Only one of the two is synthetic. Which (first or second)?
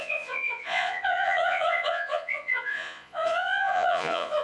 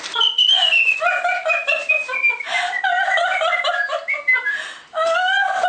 first